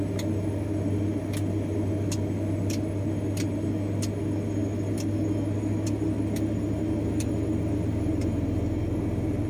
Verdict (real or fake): real